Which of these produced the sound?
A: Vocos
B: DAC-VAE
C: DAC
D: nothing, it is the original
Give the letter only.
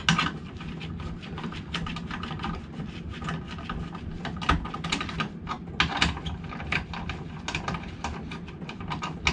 D